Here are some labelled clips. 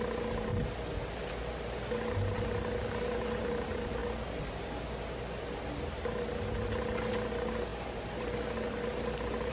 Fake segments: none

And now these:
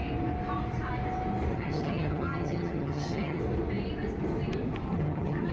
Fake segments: 1.5-3.4; 4.9-5.5

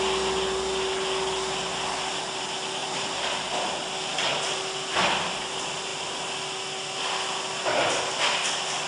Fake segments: 2.8-3.5

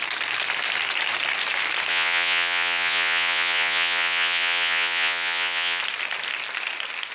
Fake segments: 1.9-5.8

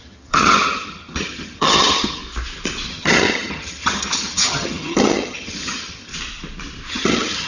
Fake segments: 0.0-2.2; 2.9-6.1; 6.9-7.5

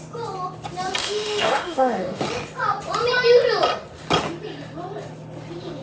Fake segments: 1.0-2.2

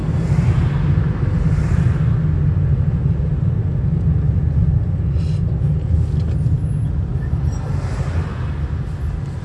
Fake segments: none

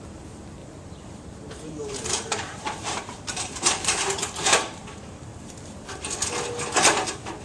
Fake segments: 0.0-5.3